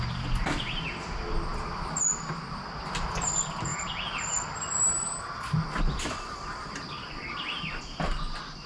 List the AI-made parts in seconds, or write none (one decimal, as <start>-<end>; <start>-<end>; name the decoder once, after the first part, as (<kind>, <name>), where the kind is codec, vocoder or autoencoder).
none